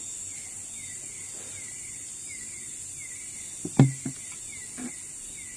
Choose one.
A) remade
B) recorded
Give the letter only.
B